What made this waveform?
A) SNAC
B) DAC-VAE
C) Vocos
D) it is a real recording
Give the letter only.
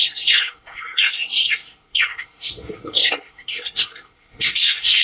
A